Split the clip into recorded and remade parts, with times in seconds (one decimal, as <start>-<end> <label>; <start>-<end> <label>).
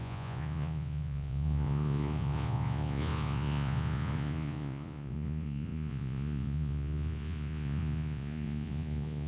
0.0-9.3 remade